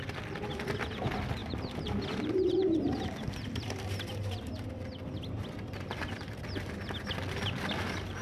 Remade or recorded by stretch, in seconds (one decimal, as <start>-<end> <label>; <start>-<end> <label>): 0.0-1.4 recorded; 1.4-4.7 remade; 4.7-8.2 recorded